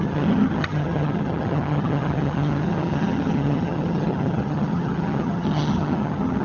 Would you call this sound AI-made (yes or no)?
yes